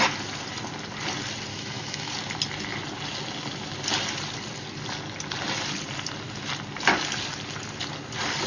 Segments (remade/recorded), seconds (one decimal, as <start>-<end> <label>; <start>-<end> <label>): 0.0-1.5 recorded; 1.5-2.1 remade; 2.1-8.5 recorded